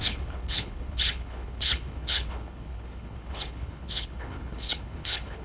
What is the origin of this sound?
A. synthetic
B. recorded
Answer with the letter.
A